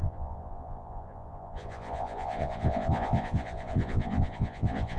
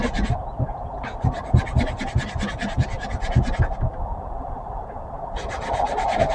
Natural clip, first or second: second